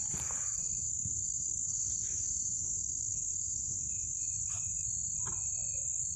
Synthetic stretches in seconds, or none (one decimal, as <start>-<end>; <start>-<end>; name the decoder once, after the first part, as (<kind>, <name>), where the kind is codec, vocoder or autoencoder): 0.6-4.3 (autoencoder, DAC-VAE)